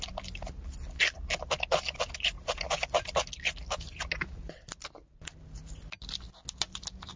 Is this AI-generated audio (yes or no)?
no